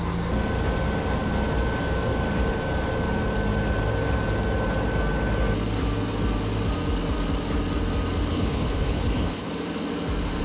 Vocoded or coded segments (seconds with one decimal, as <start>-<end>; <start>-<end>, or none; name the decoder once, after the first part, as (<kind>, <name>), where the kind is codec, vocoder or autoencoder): 8.3-9.5 (codec, HILCodec)